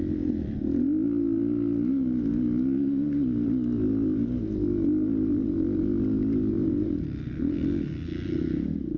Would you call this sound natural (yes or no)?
yes